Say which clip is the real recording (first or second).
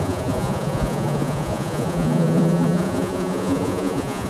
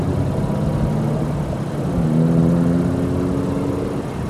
second